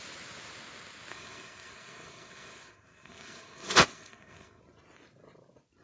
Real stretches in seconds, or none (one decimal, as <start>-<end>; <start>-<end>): 0.0-1.1; 4.6-5.8